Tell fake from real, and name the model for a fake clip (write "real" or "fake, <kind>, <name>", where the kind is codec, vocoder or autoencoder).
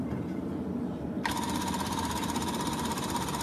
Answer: fake, vocoder, BigVGAN v2